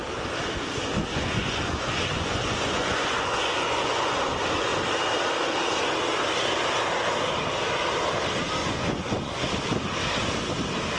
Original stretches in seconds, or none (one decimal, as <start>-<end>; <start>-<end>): 0.0-1.1; 4.2-8.6; 9.5-11.0